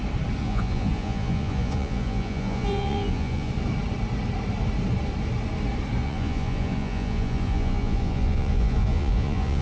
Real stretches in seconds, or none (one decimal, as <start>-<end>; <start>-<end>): 0.0-0.4; 3.5-6.0